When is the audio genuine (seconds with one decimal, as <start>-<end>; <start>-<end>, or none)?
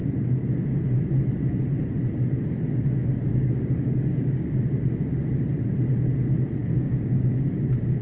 0.0-3.3; 4.4-6.6